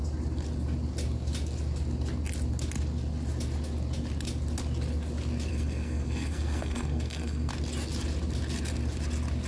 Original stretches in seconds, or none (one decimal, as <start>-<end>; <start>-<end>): 0.0-5.5; 7.5-9.5